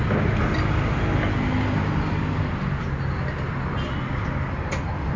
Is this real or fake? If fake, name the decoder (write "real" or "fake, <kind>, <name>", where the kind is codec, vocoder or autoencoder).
real